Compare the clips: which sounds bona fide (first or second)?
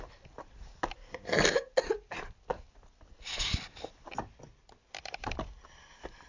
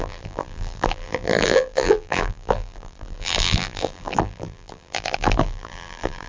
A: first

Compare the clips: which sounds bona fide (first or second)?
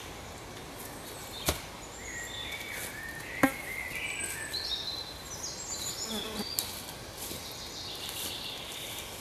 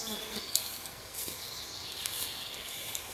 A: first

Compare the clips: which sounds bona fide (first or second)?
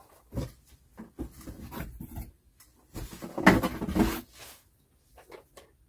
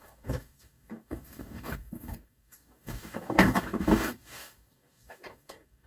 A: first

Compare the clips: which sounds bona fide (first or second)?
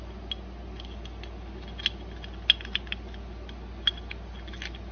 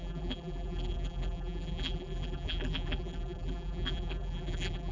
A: first